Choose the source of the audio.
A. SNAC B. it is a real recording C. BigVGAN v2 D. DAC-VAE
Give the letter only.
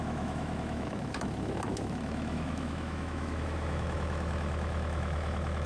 D